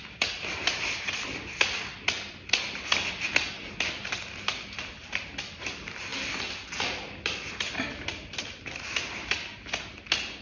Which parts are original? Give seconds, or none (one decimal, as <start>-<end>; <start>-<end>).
0.0-10.4

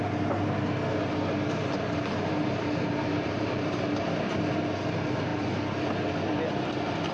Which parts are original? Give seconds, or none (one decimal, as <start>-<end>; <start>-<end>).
0.0-1.6; 4.7-7.1

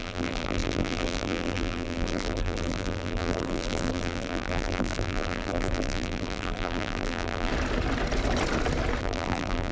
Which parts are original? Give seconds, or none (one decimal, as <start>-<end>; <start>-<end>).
7.5-9.0

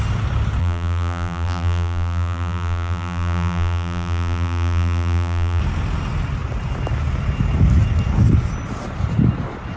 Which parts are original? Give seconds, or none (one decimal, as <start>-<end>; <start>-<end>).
0.0-0.6; 5.6-9.8

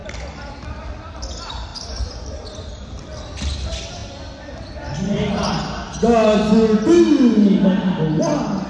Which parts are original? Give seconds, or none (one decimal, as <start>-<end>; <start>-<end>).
0.9-1.7; 2.3-8.7